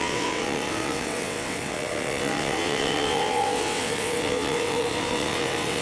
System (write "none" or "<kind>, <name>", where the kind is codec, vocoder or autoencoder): vocoder, WaveNeXt